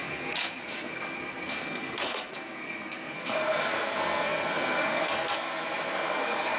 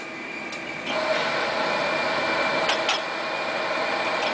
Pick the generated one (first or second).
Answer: first